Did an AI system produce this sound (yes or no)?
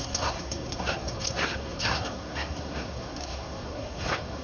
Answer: yes